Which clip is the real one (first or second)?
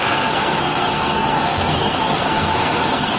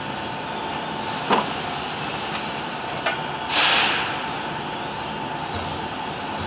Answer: second